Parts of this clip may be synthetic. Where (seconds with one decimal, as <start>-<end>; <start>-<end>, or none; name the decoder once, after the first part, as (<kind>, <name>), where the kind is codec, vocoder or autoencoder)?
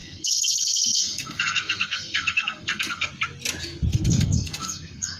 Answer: 0.0-3.1 (codec, SNAC); 3.9-5.2